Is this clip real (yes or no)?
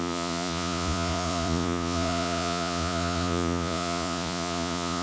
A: no